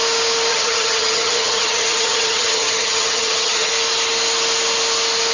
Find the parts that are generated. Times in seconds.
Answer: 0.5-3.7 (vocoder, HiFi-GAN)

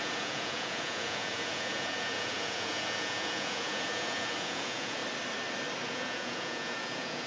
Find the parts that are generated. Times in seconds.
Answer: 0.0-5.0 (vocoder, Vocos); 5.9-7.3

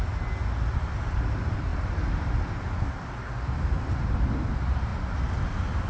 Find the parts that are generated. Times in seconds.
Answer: none